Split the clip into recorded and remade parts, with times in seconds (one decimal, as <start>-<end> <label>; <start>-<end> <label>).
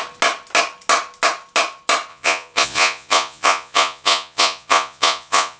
0.0-2.1 recorded; 2.1-5.6 remade